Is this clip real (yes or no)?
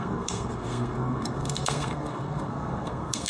no